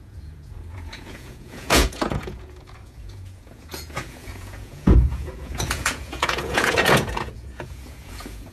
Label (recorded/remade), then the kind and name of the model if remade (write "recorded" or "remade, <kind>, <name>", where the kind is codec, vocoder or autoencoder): remade, vocoder, Vocos